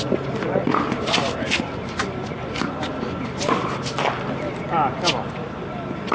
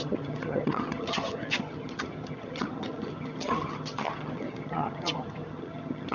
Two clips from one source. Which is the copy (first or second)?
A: second